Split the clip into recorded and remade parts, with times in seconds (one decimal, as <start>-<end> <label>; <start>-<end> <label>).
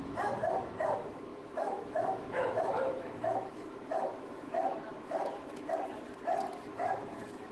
0.0-1.3 recorded; 1.3-5.8 remade; 5.8-6.7 recorded; 6.7-7.5 remade